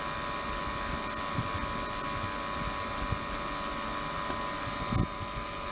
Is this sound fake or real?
real